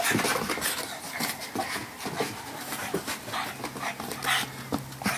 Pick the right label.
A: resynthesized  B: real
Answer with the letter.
B